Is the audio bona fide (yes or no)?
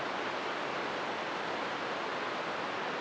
yes